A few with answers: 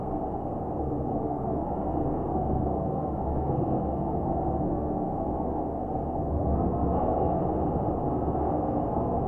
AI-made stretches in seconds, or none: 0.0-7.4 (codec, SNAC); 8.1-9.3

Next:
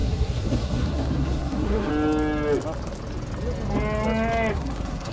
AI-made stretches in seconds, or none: 0.0-1.9 (codec, SNAC); 4.5-5.1

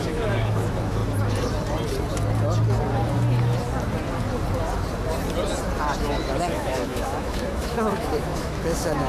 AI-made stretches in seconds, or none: 0.0-1.0 (autoencoder, DAC-VAE); 6.0-9.1

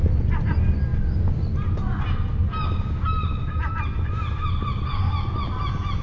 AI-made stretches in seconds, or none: none

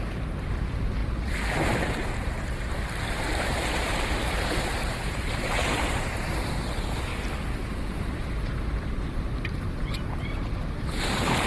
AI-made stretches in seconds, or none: 0.0-7.1 (vocoder, BigVGAN v2); 7.9-11.5

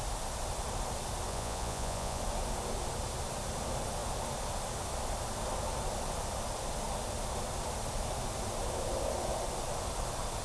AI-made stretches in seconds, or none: 1.3-2.2 (vocoder, Vocos)

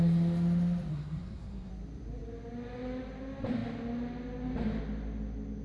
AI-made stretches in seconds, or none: 0.9-1.7 (codec, SNAC)

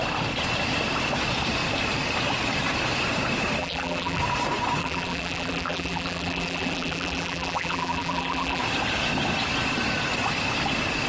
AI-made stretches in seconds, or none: 3.6-4.2 (vocoder, BigVGAN v2); 4.8-8.6